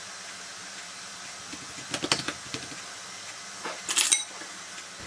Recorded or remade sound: recorded